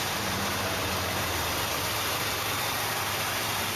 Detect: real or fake fake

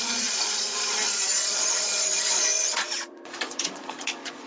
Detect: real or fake fake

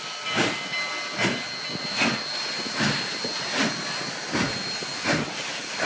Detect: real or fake real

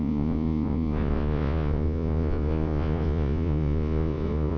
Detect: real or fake fake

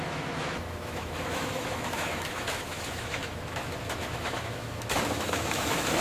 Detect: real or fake fake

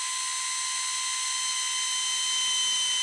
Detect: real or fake real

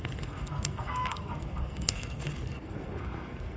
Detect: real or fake fake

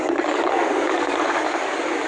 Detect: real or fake fake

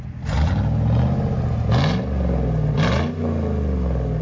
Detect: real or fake real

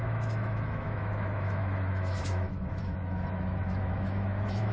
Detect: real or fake fake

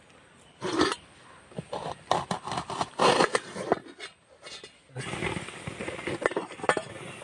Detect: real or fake real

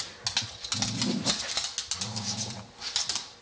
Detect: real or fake real